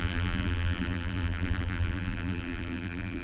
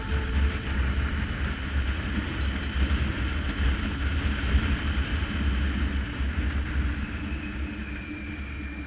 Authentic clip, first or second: second